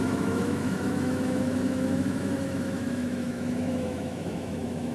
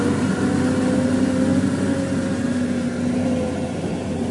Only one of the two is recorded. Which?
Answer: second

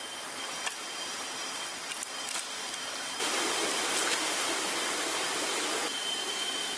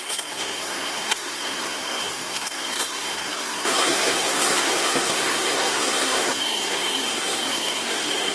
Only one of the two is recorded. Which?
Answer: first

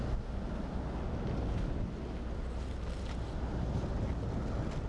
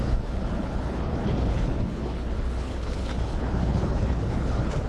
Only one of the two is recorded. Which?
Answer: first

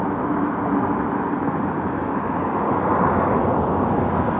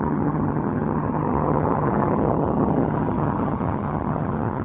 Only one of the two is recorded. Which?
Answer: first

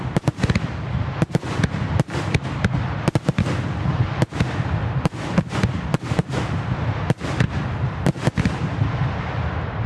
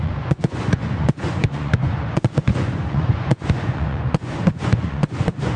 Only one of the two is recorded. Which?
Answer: first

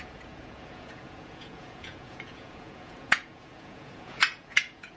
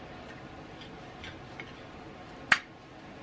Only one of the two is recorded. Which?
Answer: second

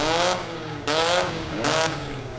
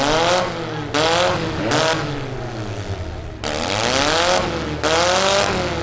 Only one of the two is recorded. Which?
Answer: second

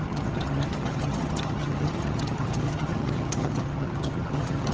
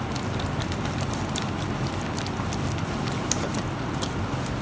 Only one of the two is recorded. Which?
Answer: second